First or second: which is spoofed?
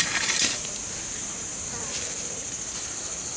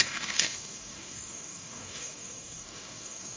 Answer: second